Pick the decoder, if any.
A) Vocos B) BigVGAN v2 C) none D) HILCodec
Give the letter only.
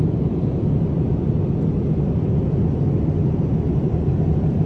C